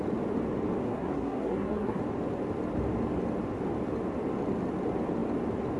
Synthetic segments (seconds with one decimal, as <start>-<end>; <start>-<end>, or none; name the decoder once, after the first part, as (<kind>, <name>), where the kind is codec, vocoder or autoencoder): 0.8-2.0 (codec, SNAC)